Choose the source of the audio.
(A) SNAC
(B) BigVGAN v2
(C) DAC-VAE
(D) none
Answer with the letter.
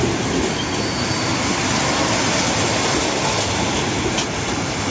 D